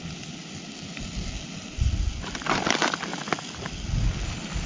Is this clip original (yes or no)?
yes